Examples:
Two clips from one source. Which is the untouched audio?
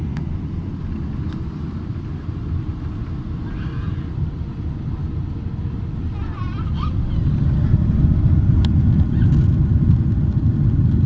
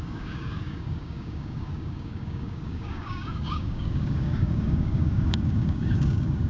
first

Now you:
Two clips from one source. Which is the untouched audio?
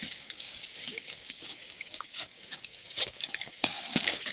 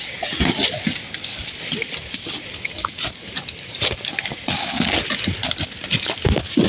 second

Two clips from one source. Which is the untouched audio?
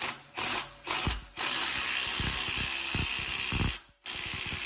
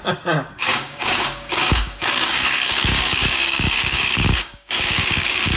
first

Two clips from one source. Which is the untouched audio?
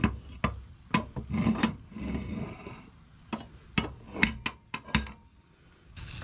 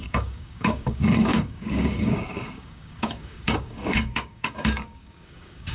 first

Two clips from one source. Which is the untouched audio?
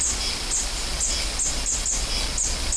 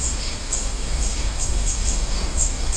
first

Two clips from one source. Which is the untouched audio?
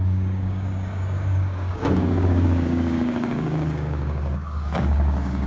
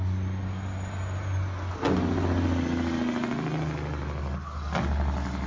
second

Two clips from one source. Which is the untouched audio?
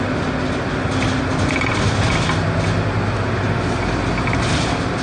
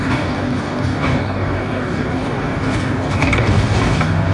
first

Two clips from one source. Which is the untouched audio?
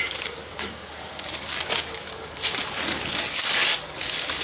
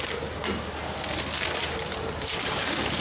second